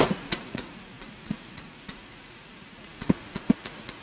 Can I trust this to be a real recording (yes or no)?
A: no